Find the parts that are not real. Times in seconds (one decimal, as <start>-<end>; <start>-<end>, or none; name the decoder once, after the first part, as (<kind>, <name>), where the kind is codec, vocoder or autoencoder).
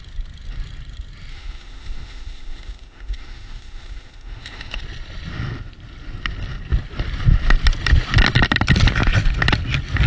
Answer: 1.3-4.8 (autoencoder, DAC-VAE)